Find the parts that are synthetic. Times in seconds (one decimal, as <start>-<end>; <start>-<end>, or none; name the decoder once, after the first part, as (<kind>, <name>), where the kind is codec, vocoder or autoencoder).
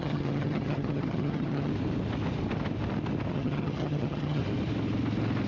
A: 0.0-1.7 (vocoder, HiFi-GAN); 3.3-4.4